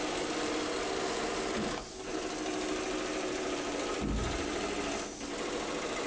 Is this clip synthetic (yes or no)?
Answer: no